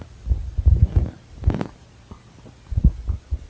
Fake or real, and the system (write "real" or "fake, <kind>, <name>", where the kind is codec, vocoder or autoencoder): real